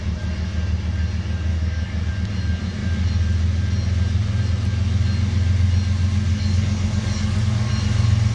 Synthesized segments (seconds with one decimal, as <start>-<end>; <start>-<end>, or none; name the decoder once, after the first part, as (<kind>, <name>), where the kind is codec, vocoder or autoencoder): 1.5-2.1 (codec, DAC); 6.3-7.7